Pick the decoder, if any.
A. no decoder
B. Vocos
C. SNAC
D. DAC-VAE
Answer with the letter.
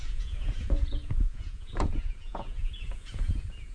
B